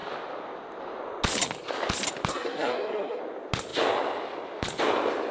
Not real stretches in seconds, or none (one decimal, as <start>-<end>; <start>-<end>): 2.3-3.2